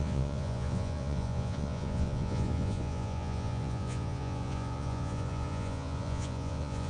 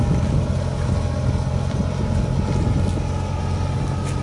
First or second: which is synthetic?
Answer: first